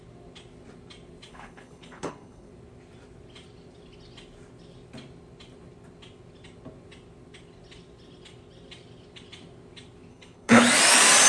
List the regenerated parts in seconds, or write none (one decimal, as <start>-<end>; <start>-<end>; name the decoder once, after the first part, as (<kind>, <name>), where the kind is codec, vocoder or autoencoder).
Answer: 1.3-2.5 (codec, HILCodec); 10.1-10.6